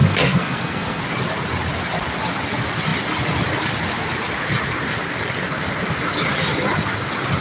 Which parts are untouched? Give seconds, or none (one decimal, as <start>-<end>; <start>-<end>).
1.0-7.4